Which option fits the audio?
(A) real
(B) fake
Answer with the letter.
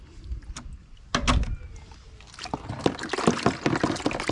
A